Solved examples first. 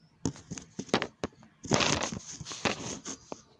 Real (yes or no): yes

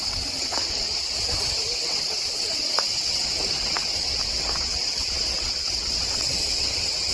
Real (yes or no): no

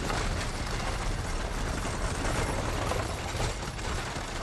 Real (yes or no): yes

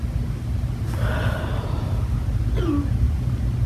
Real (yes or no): yes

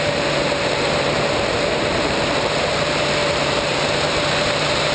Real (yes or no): no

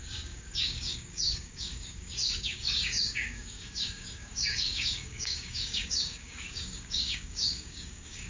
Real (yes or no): no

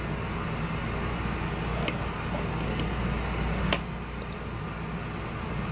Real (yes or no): yes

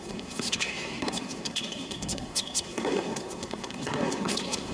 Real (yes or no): no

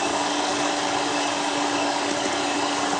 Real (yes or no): no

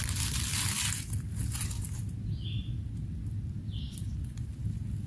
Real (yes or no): yes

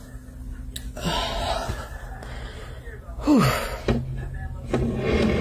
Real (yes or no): yes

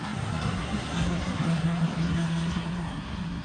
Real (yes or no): no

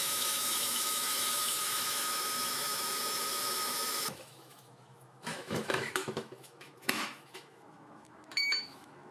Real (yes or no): no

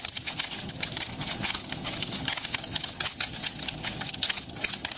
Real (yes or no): no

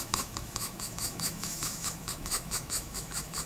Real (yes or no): no